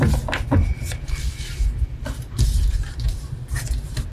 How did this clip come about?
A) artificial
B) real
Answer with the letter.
B